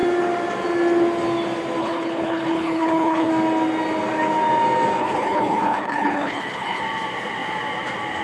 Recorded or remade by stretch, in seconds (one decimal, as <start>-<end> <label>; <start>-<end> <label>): 0.0-1.8 recorded; 1.8-3.3 remade; 3.3-5.0 recorded; 5.0-6.8 remade; 6.8-8.2 recorded